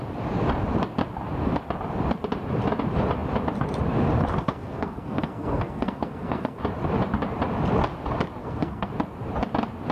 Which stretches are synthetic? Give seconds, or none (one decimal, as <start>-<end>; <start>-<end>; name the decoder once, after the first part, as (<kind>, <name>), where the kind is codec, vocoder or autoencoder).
4.3-6.6 (codec, SNAC); 8.4-8.9